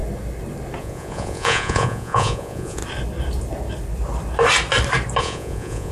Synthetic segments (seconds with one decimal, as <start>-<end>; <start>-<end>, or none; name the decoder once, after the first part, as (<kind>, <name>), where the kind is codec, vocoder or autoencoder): 0.8-2.8 (vocoder, Vocos); 5.2-5.9